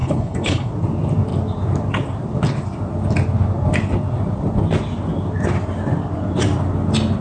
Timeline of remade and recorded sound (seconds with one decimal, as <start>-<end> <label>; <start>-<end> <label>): 0.0-0.7 remade; 0.7-7.2 recorded

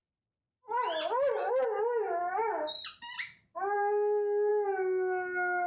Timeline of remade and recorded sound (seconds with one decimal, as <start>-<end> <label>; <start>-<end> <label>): 0.0-5.7 recorded